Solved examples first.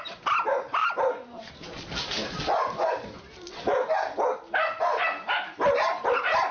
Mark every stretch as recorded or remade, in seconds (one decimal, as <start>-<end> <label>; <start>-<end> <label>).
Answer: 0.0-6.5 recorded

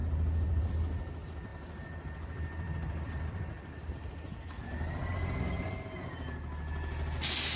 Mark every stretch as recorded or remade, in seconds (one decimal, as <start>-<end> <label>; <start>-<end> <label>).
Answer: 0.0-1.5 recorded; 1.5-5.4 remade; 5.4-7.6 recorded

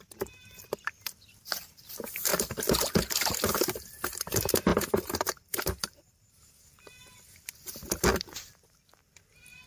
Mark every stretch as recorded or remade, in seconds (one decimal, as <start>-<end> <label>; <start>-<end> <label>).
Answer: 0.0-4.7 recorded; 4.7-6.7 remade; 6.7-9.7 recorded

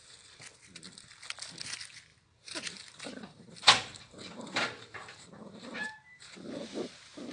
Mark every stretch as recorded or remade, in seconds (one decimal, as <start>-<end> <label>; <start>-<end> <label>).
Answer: 0.0-2.1 recorded; 2.1-6.5 remade; 6.5-7.3 recorded